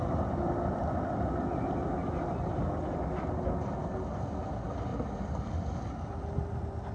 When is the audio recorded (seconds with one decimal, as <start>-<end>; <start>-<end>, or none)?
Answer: 0.0-4.9; 5.8-6.9